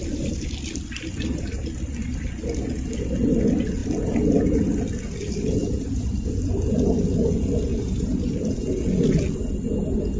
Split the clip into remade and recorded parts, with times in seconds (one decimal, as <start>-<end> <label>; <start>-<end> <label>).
0.0-5.6 recorded; 5.6-6.3 remade; 6.3-7.7 recorded; 7.7-8.5 remade; 8.5-10.2 recorded